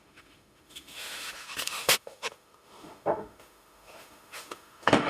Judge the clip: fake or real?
fake